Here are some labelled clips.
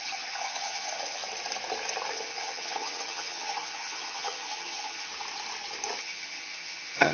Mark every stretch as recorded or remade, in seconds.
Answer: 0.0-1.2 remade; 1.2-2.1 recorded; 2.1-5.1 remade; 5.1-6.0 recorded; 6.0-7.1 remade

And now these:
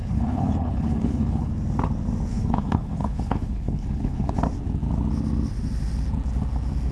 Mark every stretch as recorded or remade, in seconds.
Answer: 0.0-1.5 remade; 1.5-2.3 recorded; 2.3-4.3 remade; 4.3-6.9 recorded

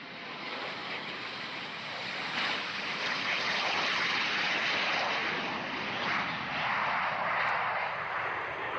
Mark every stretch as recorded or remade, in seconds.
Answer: 0.0-5.2 remade; 5.2-6.5 recorded; 6.5-8.8 remade